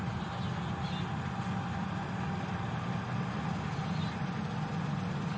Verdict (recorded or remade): recorded